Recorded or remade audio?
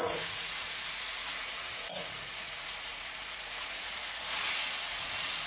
remade